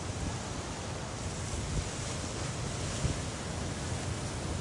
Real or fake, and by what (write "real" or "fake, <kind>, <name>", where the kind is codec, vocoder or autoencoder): real